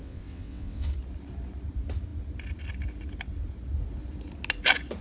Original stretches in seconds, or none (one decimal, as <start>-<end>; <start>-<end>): 0.9-5.0